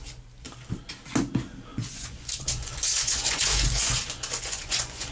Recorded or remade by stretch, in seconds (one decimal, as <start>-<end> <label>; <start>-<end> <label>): 0.0-1.7 recorded; 1.7-5.1 remade